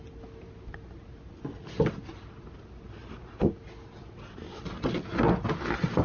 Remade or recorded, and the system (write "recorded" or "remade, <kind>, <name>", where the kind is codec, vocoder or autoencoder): recorded